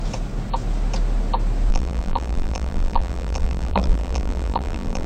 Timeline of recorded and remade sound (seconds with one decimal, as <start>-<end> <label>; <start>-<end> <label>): 0.0-1.7 recorded; 1.7-5.1 remade